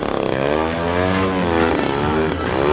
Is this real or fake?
real